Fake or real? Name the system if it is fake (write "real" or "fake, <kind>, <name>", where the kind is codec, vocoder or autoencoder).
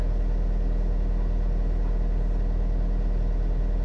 real